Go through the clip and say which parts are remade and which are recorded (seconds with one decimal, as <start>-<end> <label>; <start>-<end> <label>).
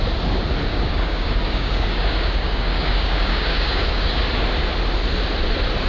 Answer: 0.0-0.7 recorded; 0.7-4.2 remade; 4.2-5.9 recorded